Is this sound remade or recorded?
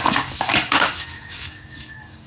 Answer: remade